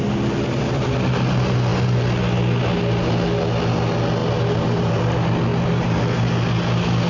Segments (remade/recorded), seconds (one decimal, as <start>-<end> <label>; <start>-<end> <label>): 0.0-4.2 recorded; 4.2-4.9 remade; 4.9-5.5 recorded; 5.5-6.0 remade; 6.0-7.1 recorded